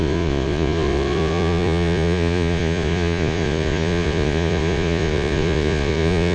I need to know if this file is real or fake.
fake